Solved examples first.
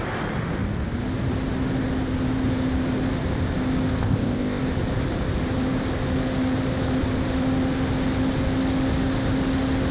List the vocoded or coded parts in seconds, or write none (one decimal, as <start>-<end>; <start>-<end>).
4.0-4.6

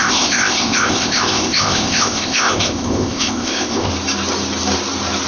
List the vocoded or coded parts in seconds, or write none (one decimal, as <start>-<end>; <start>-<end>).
0.0-3.9

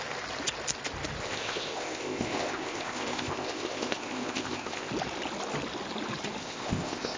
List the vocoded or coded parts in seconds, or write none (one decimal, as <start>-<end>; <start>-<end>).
1.2-4.9; 6.4-7.2

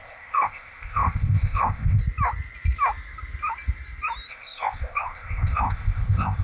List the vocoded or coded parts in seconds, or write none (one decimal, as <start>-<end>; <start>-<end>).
0.0-2.0; 4.3-6.4

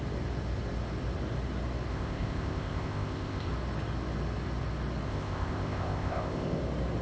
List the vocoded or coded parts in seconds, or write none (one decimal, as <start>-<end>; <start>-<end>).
1.9-3.5; 5.1-6.6

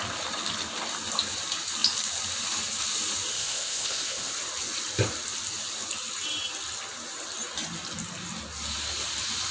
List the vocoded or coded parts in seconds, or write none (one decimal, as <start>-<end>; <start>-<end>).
3.3-4.3

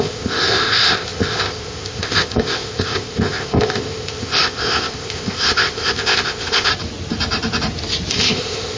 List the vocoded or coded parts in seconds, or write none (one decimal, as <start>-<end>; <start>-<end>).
0.0-6.7; 8.1-8.8